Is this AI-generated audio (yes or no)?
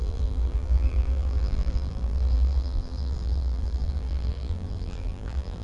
yes